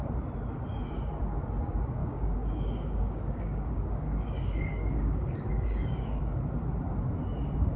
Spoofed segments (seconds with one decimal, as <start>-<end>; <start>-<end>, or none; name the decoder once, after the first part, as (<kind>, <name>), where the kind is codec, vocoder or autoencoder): 2.0-6.2 (codec, DAC)